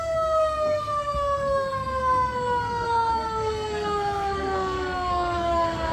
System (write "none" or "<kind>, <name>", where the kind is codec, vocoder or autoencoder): codec, SNAC